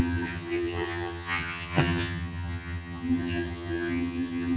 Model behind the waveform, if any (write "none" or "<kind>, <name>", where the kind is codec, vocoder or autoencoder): vocoder, HiFi-GAN